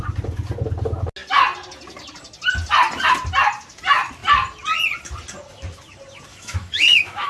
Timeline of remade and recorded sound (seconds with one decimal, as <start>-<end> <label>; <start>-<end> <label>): 0.0-6.3 recorded; 6.3-7.3 remade